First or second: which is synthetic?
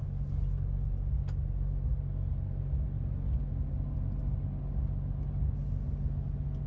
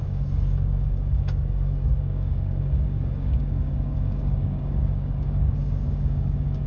second